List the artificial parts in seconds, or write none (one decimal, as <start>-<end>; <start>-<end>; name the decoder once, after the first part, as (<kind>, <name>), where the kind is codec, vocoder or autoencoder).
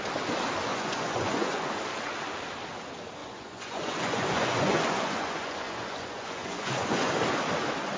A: 0.7-1.7 (vocoder, Vocos); 3.2-7.1